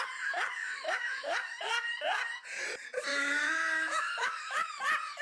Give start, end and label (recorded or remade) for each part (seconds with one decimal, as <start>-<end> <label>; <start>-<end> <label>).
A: 0.0-0.6 recorded; 0.6-1.6 remade; 1.6-3.1 recorded; 3.1-4.8 remade; 4.8-5.2 recorded